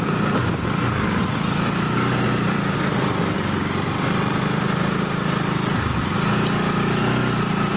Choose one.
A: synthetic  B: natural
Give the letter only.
B